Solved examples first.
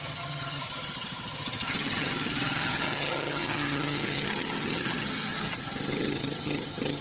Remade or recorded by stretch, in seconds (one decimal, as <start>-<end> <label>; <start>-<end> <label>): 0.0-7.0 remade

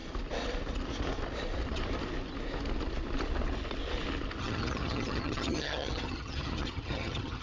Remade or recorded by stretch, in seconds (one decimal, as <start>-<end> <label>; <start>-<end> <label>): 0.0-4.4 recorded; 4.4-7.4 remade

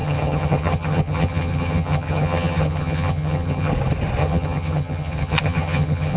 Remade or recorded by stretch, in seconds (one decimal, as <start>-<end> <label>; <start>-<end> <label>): 0.0-3.7 remade; 3.7-4.2 recorded; 4.2-6.2 remade

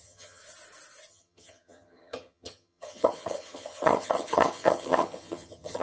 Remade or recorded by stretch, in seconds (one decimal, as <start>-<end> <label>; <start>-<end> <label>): 0.0-0.4 remade; 0.4-1.1 recorded; 1.1-5.8 remade